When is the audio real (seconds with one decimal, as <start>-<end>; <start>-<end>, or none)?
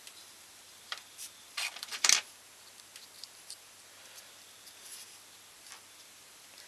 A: 1.9-5.9